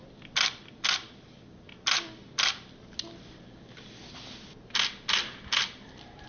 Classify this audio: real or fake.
real